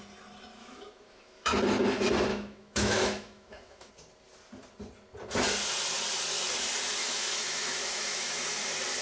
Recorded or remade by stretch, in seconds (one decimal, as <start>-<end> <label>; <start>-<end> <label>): 0.0-0.6 recorded; 0.6-1.5 remade; 1.5-2.3 recorded; 2.3-3.9 remade; 3.9-7.0 recorded; 7.0-8.4 remade; 8.4-9.0 recorded